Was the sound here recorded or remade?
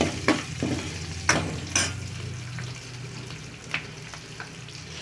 recorded